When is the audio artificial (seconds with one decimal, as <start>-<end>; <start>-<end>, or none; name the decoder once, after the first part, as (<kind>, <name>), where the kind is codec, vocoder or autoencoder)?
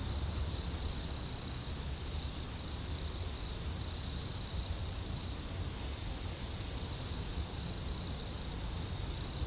none